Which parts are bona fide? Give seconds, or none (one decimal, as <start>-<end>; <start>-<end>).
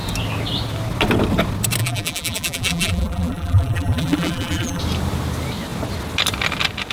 0.0-1.8; 4.8-6.9